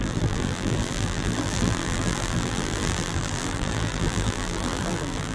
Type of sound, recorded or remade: remade